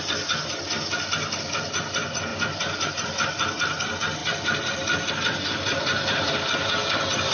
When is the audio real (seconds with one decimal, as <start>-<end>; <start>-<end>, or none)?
0.0-7.3